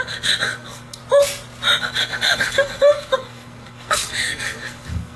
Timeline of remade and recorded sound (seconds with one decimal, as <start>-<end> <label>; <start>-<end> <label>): 0.0-1.0 remade; 1.0-1.8 recorded; 1.8-5.2 remade